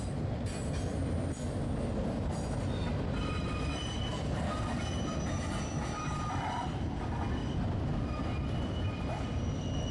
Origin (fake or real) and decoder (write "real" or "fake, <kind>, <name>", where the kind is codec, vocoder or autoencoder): real